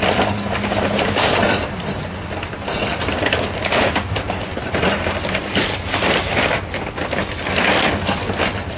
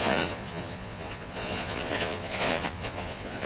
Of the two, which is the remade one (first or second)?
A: second